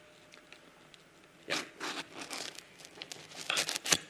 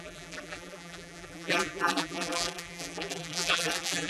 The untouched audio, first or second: first